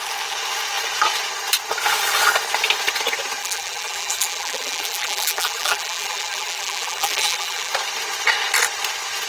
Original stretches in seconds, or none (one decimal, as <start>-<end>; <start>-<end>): 0.0-3.4; 7.7-9.3